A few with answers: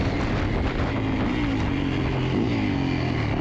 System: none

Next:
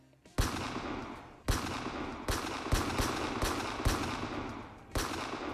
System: none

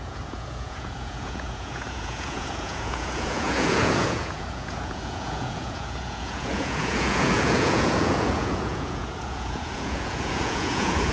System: vocoder, Vocos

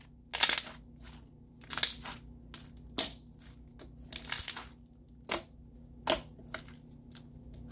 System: none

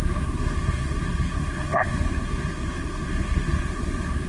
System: codec, SNAC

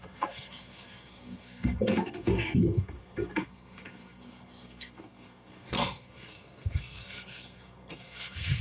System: codec, SNAC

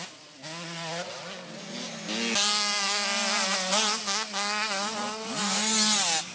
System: none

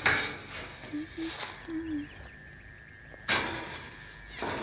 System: none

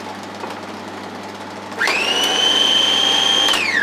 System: none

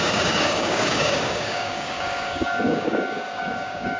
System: codec, DAC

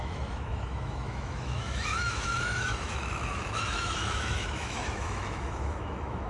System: autoencoder, DAC-VAE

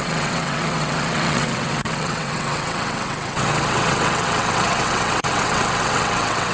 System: vocoder, WaveNeXt